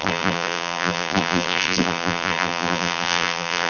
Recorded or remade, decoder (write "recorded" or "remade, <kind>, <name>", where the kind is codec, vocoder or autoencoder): remade, vocoder, BigVGAN v2